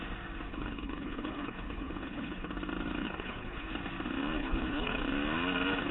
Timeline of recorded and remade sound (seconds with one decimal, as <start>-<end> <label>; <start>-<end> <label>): 0.0-0.5 recorded; 0.5-2.5 remade; 2.5-3.0 recorded; 3.0-3.7 remade; 3.7-4.4 recorded; 4.4-5.0 remade; 5.0-5.9 recorded